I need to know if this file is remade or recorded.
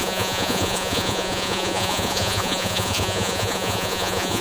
remade